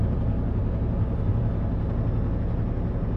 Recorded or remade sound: recorded